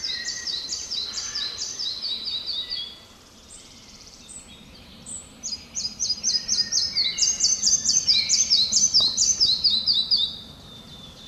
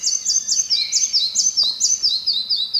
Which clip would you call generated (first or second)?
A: first